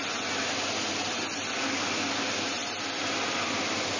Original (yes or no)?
yes